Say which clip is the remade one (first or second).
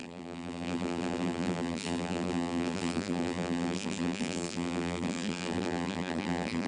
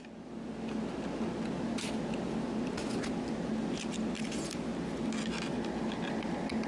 first